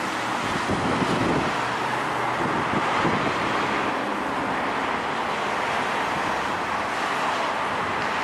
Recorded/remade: recorded